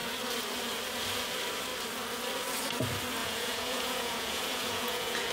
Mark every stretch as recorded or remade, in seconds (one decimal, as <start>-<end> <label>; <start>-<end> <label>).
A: 0.0-3.2 recorded; 3.2-5.3 remade